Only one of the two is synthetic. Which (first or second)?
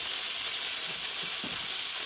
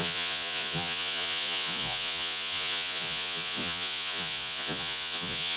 second